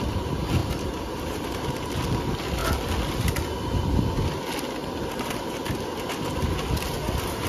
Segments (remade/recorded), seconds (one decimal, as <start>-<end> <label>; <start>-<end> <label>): 0.0-0.6 recorded; 0.6-2.0 remade; 2.0-4.8 recorded; 4.8-5.5 remade; 5.5-7.5 recorded